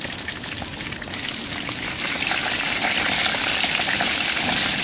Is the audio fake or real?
real